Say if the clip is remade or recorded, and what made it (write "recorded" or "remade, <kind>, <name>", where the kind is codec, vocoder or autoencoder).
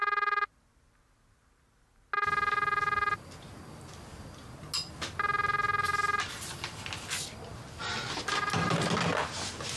recorded